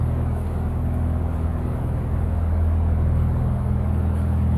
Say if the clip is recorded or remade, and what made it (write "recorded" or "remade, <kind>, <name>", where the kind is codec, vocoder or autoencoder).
remade, codec, DAC